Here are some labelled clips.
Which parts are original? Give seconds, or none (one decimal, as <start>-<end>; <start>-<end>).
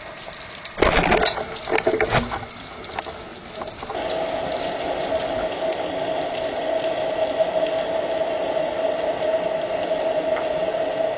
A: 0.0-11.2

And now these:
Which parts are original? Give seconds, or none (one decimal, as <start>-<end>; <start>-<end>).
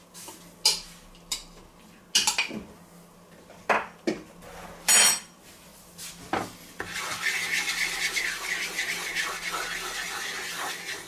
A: 0.0-11.1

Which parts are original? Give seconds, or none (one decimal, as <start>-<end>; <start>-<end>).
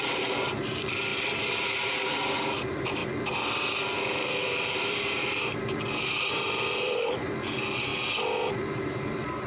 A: 7.9-8.5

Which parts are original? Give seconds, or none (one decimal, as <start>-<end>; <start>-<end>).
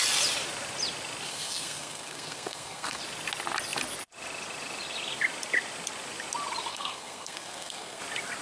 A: 0.0-1.3; 3.0-6.7; 8.0-8.4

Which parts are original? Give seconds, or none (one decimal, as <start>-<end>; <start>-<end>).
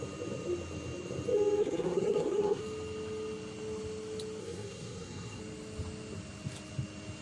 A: 0.0-1.6; 2.6-4.4; 5.4-7.2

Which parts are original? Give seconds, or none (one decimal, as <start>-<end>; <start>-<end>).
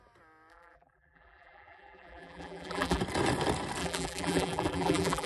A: 0.0-0.5; 3.0-3.8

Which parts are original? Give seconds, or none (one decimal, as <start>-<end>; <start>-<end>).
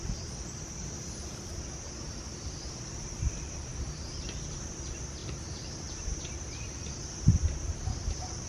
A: 0.0-3.7; 4.4-5.2; 6.2-8.5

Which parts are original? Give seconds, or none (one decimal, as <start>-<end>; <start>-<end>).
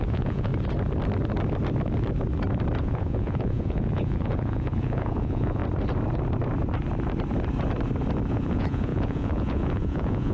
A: 0.5-2.8; 5.6-8.3